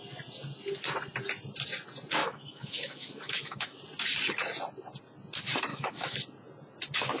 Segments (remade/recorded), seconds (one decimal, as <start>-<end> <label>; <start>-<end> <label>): 0.0-2.2 recorded; 2.2-3.8 remade; 3.8-5.7 recorded; 5.7-6.2 remade; 6.2-7.2 recorded